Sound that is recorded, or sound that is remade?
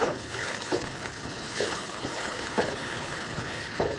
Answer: remade